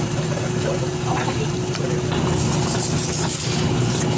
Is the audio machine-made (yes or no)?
no